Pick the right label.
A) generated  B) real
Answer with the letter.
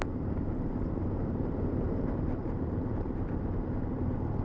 A